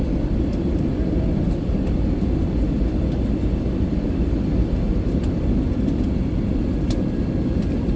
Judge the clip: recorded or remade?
recorded